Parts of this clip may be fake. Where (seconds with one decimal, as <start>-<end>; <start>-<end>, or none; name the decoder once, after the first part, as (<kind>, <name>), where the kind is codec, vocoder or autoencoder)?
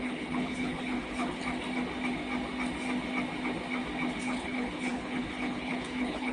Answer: 0.0-1.4 (codec, HILCodec); 4.2-6.3